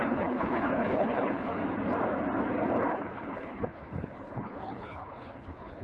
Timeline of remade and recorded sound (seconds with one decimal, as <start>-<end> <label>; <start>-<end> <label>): 0.0-1.6 remade; 1.6-2.9 recorded; 2.9-5.8 remade